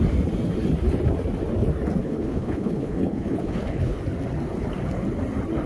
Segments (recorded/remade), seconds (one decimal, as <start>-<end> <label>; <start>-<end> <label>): 0.0-2.0 recorded; 2.0-4.0 remade; 4.0-5.7 recorded